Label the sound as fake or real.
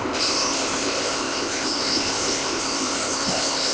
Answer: fake